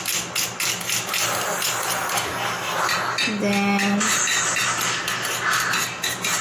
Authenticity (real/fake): real